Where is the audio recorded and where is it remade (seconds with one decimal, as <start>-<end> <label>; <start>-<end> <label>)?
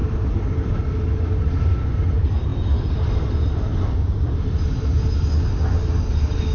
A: 0.0-6.5 recorded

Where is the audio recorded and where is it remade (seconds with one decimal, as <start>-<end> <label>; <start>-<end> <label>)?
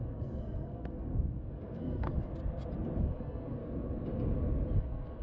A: 0.0-2.3 remade; 2.3-3.0 recorded; 3.0-3.6 remade; 3.6-4.8 recorded; 4.8-5.2 remade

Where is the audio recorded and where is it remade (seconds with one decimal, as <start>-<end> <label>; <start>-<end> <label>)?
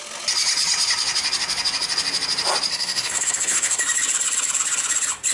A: 0.0-2.7 recorded; 2.7-3.8 remade; 3.8-5.3 recorded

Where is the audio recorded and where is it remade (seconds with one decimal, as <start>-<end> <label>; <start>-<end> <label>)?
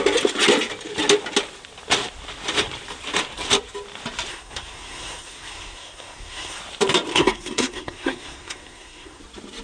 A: 0.0-4.3 recorded; 4.3-6.6 remade; 6.6-7.1 recorded; 7.1-9.2 remade; 9.2-9.6 recorded